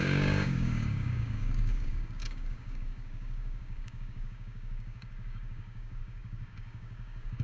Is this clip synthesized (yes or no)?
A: yes